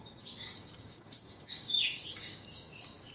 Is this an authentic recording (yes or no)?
no